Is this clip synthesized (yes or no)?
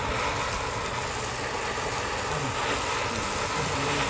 no